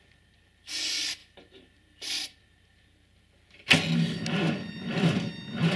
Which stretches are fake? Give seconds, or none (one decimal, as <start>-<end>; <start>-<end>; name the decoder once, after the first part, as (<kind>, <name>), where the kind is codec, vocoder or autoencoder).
none